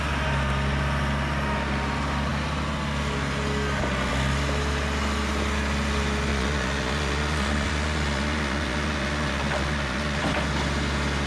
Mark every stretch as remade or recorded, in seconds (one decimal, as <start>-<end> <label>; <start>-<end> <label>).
0.0-6.3 recorded; 6.3-10.2 remade; 10.2-11.3 recorded